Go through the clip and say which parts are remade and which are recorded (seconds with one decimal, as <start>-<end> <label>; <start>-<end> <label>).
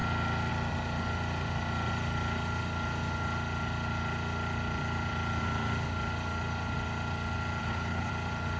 0.0-7.6 recorded; 7.6-8.1 remade; 8.1-8.6 recorded